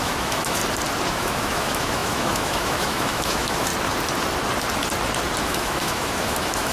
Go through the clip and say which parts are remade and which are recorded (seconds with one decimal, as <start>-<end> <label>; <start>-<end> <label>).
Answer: 0.0-0.6 remade; 0.6-1.1 recorded; 1.1-3.7 remade; 3.7-5.4 recorded; 5.4-6.7 remade